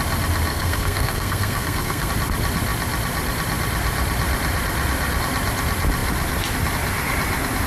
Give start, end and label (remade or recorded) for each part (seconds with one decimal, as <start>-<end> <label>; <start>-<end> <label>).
0.0-0.5 recorded; 0.5-2.1 remade; 2.1-7.7 recorded